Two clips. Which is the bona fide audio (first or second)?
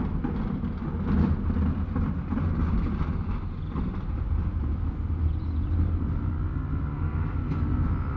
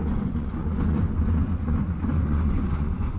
first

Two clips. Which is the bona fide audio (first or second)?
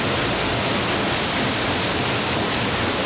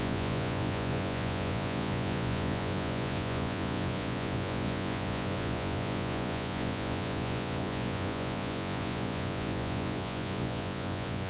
first